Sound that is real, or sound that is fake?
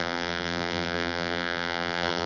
fake